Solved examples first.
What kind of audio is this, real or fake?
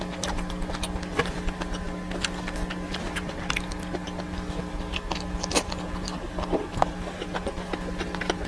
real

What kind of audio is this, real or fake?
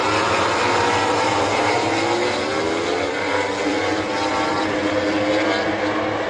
real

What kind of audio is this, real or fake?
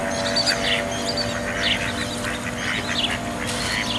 real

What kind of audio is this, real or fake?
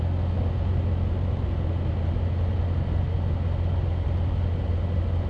real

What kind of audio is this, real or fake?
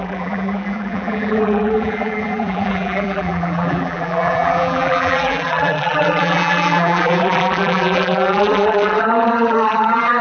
fake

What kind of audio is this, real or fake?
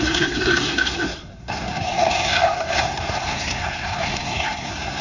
fake